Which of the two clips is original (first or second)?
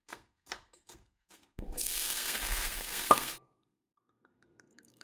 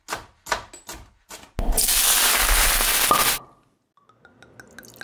second